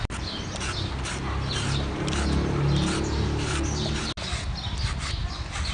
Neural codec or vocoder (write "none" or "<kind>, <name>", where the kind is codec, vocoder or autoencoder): none